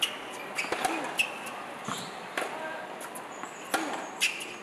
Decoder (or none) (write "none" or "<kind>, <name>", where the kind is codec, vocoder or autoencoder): none